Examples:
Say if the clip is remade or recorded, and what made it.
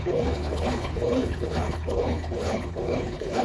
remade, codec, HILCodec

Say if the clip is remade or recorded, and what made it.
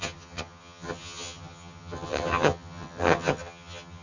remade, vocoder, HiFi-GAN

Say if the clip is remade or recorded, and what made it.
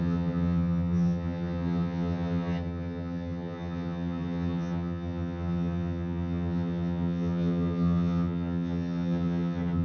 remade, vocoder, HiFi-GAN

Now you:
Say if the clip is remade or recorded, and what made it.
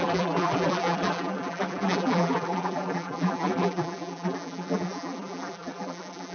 remade, vocoder, BigVGAN v2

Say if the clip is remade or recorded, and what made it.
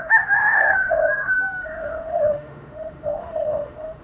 remade, autoencoder, DAC-VAE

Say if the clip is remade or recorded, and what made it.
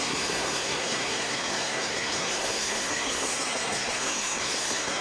remade, codec, SNAC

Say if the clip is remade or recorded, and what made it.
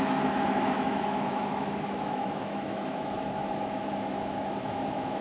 remade, autoencoder, DAC-VAE